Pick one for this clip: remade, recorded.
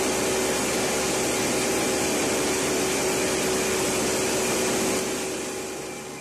recorded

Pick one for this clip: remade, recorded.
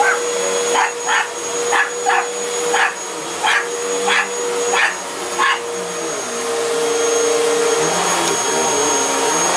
recorded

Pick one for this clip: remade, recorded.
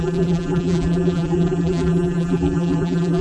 remade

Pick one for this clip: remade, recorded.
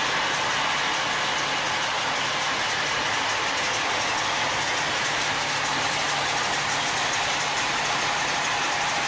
recorded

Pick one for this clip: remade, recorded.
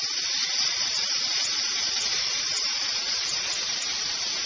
remade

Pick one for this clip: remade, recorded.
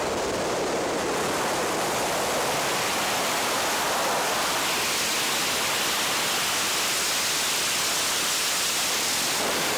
recorded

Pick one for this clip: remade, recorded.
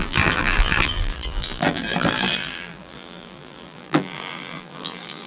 remade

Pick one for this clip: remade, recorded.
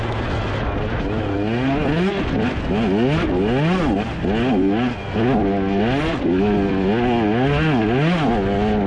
recorded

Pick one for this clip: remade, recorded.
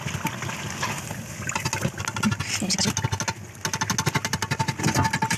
recorded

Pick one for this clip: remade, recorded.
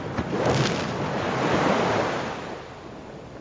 recorded